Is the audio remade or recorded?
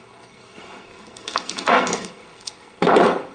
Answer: remade